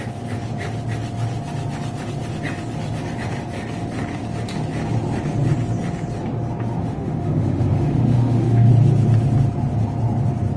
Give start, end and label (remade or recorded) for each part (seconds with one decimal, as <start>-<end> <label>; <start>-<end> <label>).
0.0-6.8 recorded; 6.8-8.7 remade; 8.7-10.6 recorded